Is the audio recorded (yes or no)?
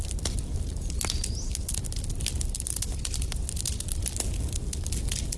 yes